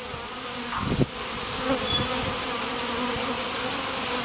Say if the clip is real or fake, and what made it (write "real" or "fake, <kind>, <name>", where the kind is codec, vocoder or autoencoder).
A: real